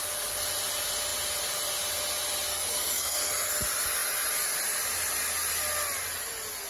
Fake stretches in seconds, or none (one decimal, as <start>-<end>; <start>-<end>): 2.5-3.5